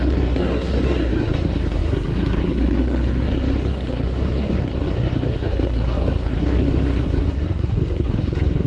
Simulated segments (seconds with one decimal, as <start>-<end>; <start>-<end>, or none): 0.0-8.7